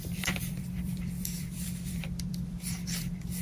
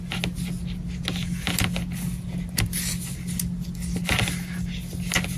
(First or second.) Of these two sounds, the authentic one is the second